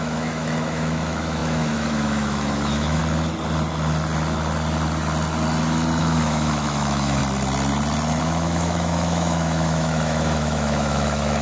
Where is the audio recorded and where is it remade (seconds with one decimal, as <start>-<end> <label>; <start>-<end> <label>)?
0.0-3.0 remade; 3.0-6.0 recorded; 6.0-7.2 remade; 7.2-8.2 recorded; 8.2-11.4 remade